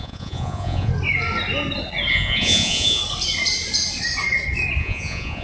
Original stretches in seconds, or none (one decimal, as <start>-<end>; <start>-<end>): 0.9-2.1; 3.0-4.8